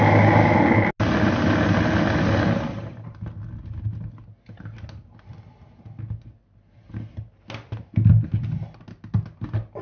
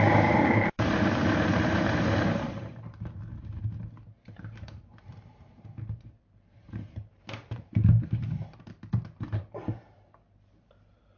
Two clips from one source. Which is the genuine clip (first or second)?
first